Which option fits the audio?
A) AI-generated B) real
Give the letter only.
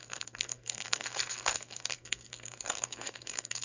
A